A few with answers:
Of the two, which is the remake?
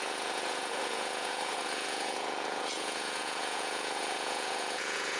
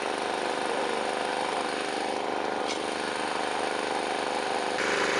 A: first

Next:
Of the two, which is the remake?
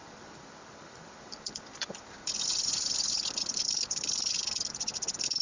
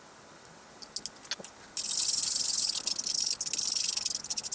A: first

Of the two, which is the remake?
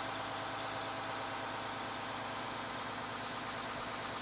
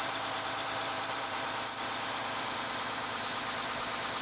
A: second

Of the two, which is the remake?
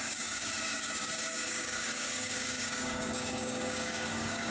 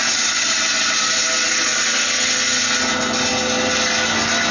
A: first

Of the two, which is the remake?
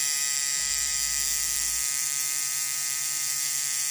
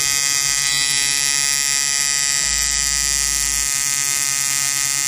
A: first